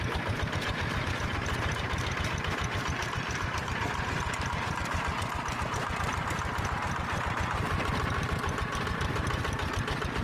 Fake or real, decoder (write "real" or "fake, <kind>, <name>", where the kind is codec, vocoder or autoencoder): real